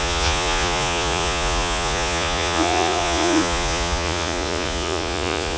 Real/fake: fake